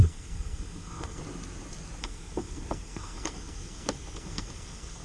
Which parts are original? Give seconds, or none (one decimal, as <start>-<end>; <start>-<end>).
1.2-2.0

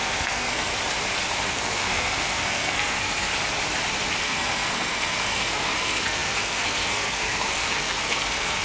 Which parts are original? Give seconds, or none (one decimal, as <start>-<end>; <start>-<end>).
0.7-1.5; 3.3-4.2

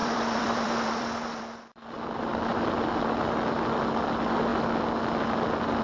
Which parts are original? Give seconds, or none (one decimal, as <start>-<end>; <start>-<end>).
1.4-5.8

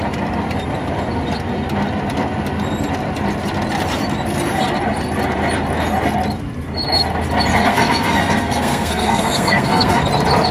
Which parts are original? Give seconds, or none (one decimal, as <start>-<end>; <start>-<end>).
0.0-7.5; 10.0-10.5

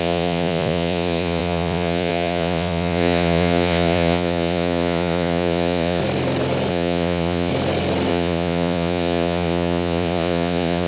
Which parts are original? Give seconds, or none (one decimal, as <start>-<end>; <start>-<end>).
6.0-6.7; 7.5-8.1

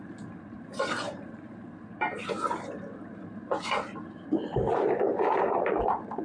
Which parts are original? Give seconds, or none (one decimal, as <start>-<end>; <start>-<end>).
none

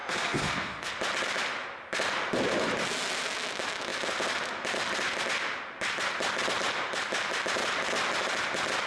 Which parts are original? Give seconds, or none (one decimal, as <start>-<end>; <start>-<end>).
0.9-8.9